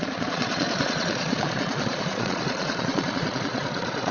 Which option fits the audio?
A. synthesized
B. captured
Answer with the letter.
A